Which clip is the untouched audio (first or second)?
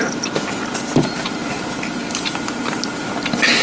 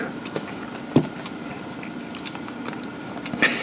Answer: first